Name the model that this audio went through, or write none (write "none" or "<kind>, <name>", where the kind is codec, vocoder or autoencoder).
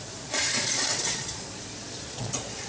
vocoder, Vocos